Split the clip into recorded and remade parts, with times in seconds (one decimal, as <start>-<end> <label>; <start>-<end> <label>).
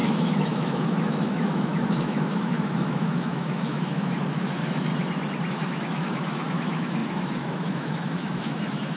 0.0-4.9 remade; 4.9-5.5 recorded; 5.5-9.0 remade